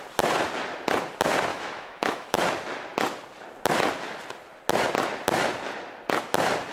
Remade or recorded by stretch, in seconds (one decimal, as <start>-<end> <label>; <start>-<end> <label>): 0.0-1.5 recorded; 1.5-2.4 remade; 2.4-6.7 recorded